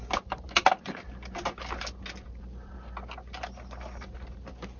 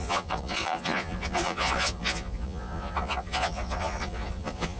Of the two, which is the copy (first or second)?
second